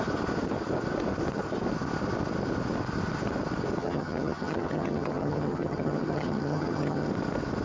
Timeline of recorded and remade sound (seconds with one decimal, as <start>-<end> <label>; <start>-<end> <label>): 0.0-3.8 recorded; 3.8-7.1 remade; 7.1-7.6 recorded